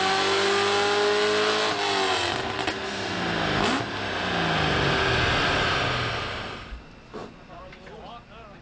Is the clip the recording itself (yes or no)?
yes